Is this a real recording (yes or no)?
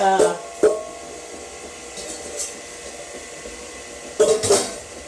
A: yes